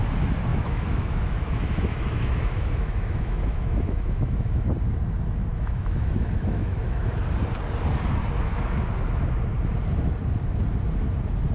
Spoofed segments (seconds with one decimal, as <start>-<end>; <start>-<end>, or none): 0.5-4.7; 5.5-7.1